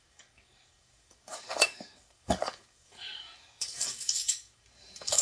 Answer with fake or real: fake